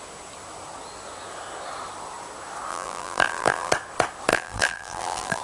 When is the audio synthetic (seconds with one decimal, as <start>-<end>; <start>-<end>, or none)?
2.7-3.7; 4.3-5.4